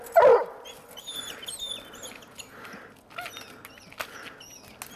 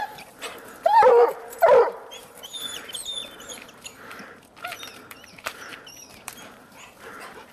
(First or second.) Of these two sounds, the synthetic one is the second